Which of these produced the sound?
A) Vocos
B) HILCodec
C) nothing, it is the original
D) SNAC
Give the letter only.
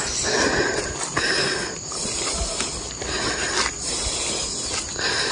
C